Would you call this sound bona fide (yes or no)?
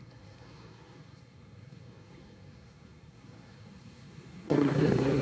no